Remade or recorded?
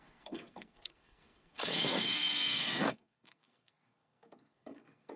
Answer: remade